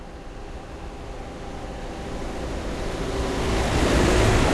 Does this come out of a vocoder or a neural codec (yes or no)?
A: no